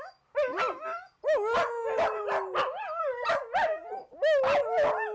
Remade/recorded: recorded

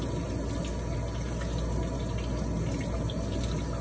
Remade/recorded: recorded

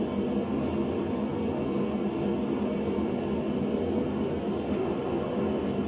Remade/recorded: recorded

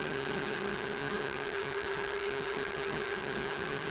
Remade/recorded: remade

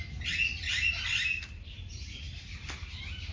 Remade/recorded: recorded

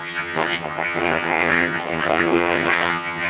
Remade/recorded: remade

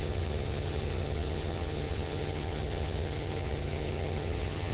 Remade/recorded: remade